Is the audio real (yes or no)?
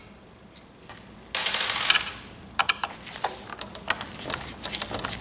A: yes